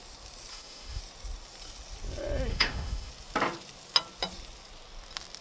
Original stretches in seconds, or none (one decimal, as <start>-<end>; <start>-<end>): 0.0-0.5; 1.0-2.5; 3.1-5.4